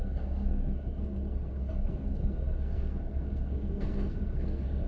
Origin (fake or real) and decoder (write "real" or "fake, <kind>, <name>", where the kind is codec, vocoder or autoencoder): fake, codec, SNAC